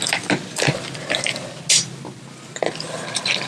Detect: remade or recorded recorded